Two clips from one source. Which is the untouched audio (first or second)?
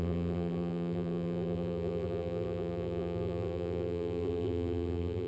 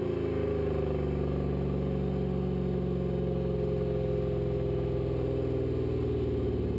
second